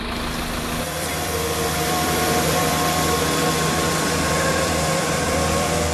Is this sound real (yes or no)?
no